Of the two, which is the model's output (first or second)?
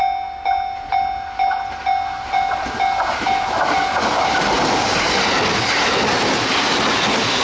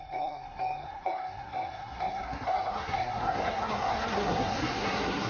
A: second